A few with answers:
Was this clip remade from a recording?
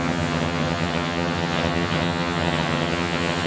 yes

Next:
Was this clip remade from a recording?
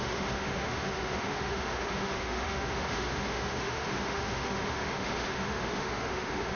yes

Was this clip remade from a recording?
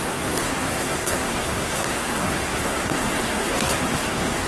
yes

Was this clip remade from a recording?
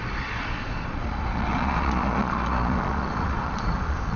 yes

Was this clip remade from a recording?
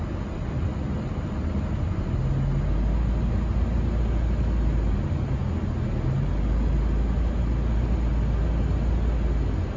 no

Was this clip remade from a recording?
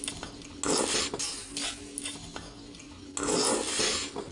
no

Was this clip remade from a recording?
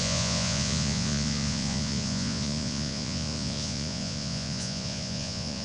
yes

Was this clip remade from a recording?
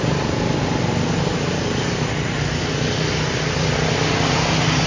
no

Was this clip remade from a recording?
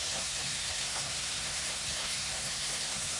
yes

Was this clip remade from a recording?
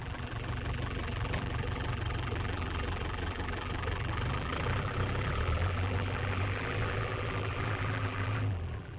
yes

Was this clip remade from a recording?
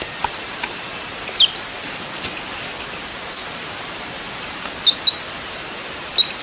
no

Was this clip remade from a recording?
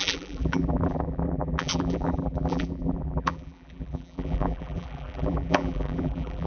yes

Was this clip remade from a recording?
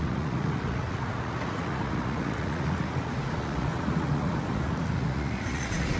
yes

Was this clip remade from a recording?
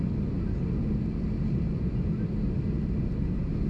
no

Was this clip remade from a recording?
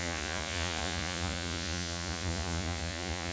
yes